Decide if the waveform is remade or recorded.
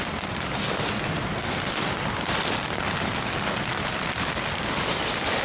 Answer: remade